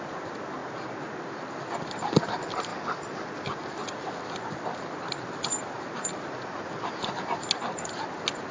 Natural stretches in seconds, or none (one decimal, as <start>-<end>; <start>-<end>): 0.0-0.6; 1.4-2.7; 7.0-8.5